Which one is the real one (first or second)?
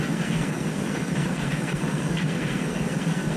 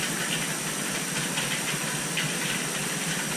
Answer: second